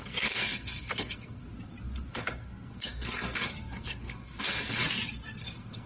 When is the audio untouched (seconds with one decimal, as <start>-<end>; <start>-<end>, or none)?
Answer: 1.4-2.1; 4.8-5.4